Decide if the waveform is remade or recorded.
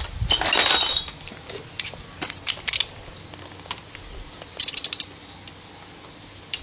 recorded